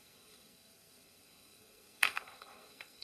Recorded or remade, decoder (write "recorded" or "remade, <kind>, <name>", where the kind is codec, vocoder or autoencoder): remade, codec, SNAC